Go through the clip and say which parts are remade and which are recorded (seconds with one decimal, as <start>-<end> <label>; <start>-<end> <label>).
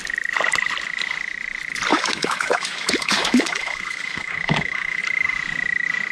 0.0-1.9 recorded; 1.9-5.0 remade; 5.0-6.1 recorded